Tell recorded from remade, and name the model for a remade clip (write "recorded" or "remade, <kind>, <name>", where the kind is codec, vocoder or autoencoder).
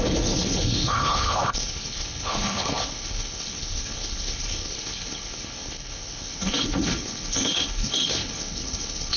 remade, codec, HILCodec